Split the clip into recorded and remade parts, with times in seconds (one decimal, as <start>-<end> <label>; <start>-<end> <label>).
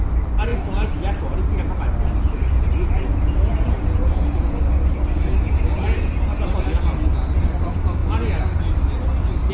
0.0-3.1 recorded; 3.1-4.6 remade; 4.6-9.5 recorded